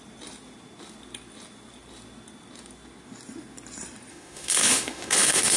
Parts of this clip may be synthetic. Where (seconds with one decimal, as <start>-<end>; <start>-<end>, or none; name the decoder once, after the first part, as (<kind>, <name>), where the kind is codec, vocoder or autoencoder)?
4.1-5.6 (autoencoder, DAC-VAE)